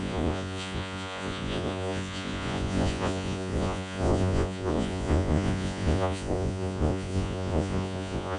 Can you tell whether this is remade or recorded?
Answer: remade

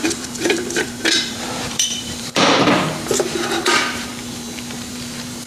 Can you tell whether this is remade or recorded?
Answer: remade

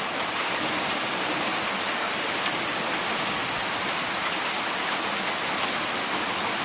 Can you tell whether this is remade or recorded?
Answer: recorded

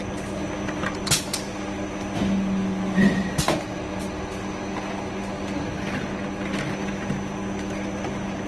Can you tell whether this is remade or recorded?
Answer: recorded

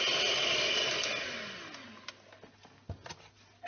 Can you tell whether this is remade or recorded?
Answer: recorded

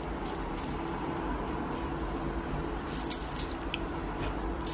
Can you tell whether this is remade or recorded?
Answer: recorded